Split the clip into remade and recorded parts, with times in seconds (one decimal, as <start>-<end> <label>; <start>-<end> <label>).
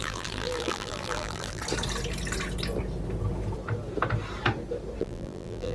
0.0-1.6 remade; 1.6-5.0 recorded; 5.0-5.7 remade